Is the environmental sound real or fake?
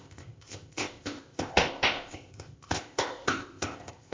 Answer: fake